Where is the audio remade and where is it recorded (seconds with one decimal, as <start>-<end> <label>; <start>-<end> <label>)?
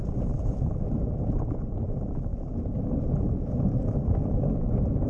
0.0-2.3 recorded; 2.3-3.4 remade; 3.4-3.8 recorded; 3.8-5.1 remade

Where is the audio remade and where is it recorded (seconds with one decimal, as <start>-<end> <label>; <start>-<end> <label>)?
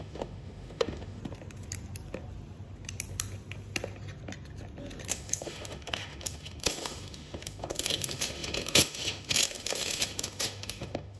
0.0-1.2 remade; 1.2-5.1 recorded; 5.1-11.2 remade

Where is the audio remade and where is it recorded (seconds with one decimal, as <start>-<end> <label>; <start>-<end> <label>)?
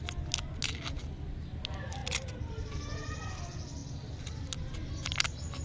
0.0-2.0 recorded; 2.0-3.4 remade; 3.4-5.6 recorded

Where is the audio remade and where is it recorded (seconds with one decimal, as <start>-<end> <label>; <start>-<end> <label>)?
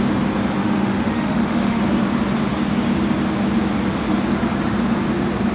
0.0-0.6 recorded; 0.6-1.8 remade; 1.8-5.5 recorded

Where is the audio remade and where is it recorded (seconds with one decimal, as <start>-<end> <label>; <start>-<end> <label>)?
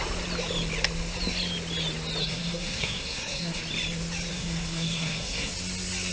0.0-2.2 recorded; 2.2-3.6 remade; 3.6-4.3 recorded; 4.3-5.5 remade; 5.5-6.1 recorded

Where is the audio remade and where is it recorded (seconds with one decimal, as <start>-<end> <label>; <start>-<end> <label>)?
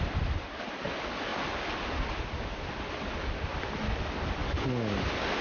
0.0-5.4 recorded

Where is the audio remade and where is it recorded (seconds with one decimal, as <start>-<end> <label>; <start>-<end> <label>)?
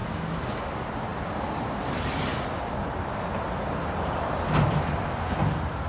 0.0-5.9 recorded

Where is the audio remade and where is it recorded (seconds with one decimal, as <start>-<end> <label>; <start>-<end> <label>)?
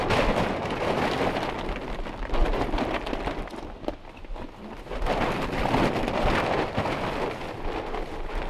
0.0-8.5 recorded